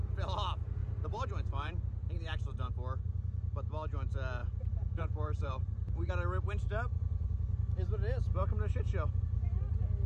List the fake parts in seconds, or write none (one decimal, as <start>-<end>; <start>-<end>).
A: 0.8-2.7; 4.4-6.1